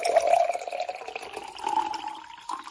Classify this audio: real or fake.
real